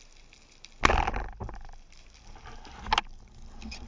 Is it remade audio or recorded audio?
recorded